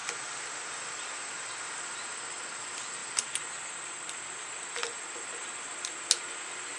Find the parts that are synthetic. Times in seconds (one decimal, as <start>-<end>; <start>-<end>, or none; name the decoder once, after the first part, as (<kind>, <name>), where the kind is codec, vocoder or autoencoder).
none